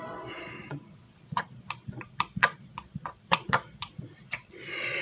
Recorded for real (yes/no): no